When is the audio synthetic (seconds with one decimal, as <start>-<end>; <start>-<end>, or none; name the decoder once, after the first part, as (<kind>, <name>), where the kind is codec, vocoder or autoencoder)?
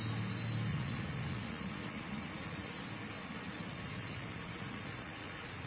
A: 0.7-2.8 (vocoder, Vocos); 3.2-5.7